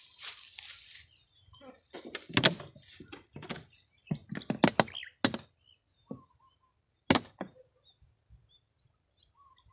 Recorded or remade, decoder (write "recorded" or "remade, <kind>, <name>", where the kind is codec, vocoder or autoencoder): recorded